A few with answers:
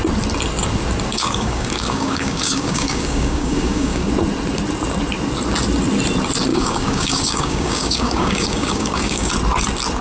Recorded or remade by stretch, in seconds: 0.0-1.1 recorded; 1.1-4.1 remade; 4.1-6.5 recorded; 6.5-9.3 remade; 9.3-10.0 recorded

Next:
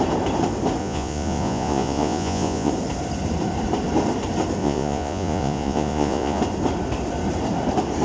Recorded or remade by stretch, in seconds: 0.0-0.8 recorded; 0.8-2.7 remade; 2.7-4.6 recorded; 4.6-6.4 remade; 6.4-8.0 recorded

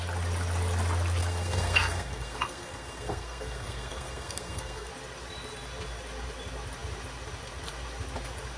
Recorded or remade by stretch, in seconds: 0.0-1.2 recorded; 1.2-4.9 remade; 4.9-8.6 recorded

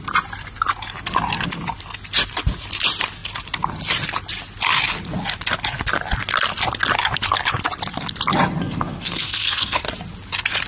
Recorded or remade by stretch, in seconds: 0.0-8.6 recorded; 8.6-9.8 remade; 9.8-10.7 recorded

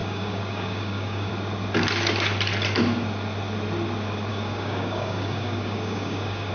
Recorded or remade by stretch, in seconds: 0.0-1.3 remade; 1.3-4.3 recorded; 4.3-6.5 remade

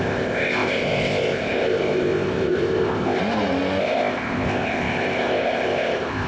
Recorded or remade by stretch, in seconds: 0.0-3.2 remade; 3.2-3.8 recorded; 3.8-6.3 remade

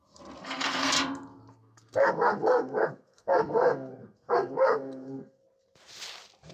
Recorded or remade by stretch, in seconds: 0.0-0.4 recorded; 0.4-0.9 remade; 0.9-1.5 recorded; 1.5-5.4 remade; 5.4-6.5 recorded

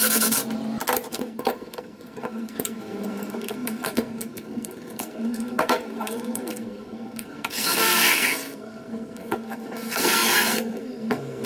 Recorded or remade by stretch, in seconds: 0.0-0.4 remade; 0.4-1.1 recorded; 1.1-11.5 remade